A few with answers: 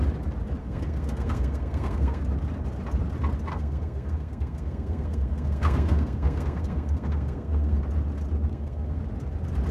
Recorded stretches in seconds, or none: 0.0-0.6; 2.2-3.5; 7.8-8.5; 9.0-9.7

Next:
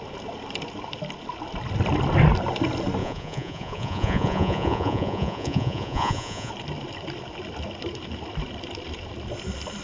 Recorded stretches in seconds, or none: 0.0-3.0; 6.5-9.8

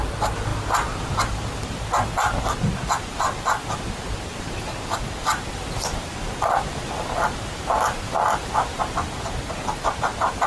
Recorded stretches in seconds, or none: 0.0-10.5

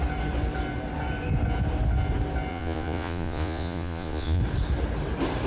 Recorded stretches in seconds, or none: 0.0-2.5; 4.4-5.5

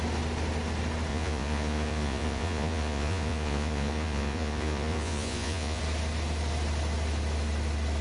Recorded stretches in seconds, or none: 0.0-1.1; 5.8-8.0

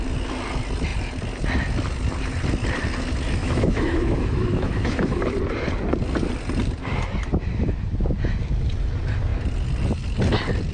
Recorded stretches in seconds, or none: 0.0-3.4; 5.3-10.7

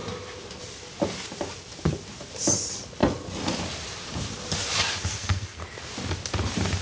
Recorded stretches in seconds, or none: 0.0-5.1; 5.6-6.8

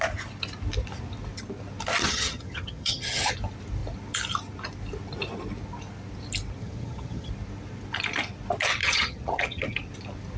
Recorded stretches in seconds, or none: 0.0-2.0; 3.3-6.6; 7.3-8.8; 9.8-10.4